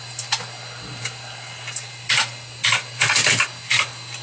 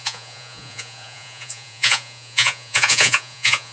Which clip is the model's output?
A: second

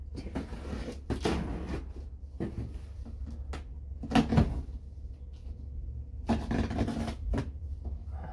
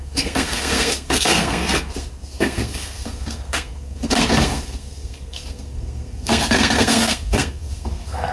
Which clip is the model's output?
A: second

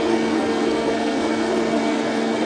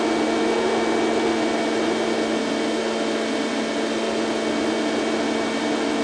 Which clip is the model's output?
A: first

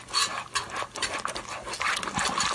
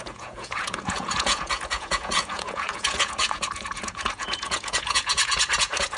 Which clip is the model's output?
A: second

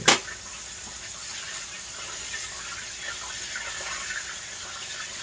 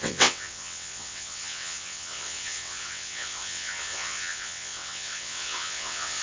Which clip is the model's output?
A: second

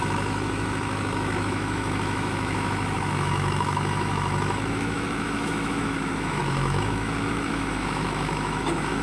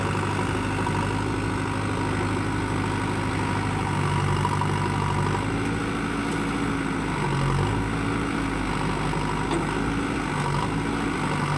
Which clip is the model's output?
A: first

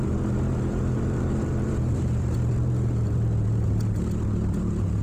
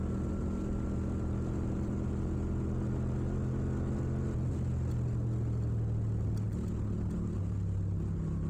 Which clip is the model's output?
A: first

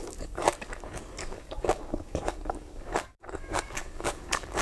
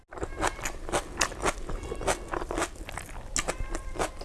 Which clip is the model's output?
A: first